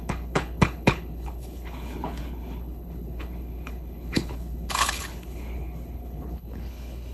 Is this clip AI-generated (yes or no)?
yes